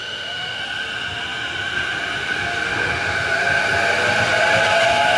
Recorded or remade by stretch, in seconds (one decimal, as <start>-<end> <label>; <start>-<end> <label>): 0.0-0.6 remade; 0.6-5.2 recorded